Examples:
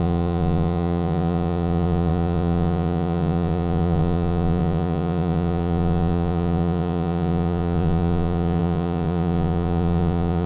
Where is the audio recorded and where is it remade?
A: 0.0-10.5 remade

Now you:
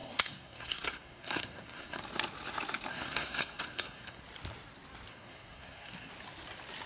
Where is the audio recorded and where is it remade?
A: 0.0-2.0 remade; 2.0-2.9 recorded; 2.9-4.2 remade; 4.2-5.1 recorded; 5.1-6.1 remade; 6.1-6.9 recorded

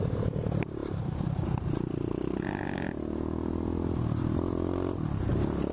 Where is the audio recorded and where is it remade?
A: 0.0-5.7 recorded